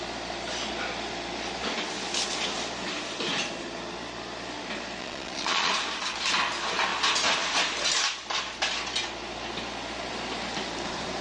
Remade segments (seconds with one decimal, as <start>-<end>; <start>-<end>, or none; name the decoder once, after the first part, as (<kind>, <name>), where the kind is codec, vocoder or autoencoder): 5.0-5.7 (vocoder, Vocos)